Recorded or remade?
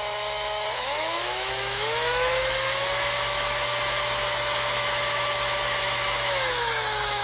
remade